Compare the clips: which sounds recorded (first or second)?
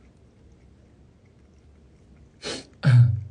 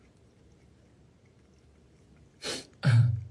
first